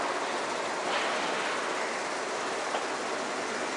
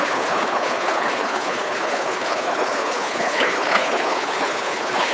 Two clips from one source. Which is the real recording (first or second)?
first